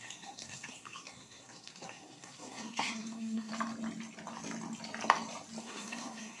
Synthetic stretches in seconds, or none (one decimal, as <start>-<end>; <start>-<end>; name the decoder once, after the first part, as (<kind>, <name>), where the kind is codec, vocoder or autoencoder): 0.0-3.5 (codec, SNAC); 5.6-6.4